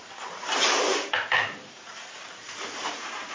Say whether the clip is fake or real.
fake